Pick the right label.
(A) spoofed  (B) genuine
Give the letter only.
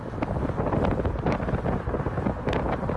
B